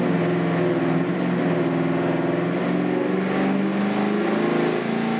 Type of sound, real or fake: real